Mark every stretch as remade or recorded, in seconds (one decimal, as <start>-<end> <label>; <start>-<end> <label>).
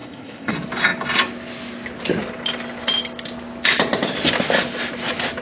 0.0-0.5 remade; 0.5-5.4 recorded